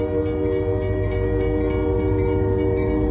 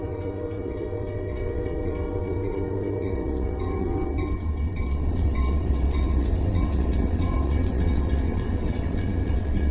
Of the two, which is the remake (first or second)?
second